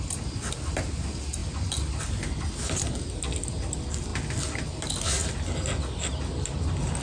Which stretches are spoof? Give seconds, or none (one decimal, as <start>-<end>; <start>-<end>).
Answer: none